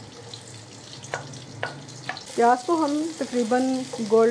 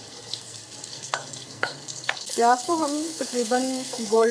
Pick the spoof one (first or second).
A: second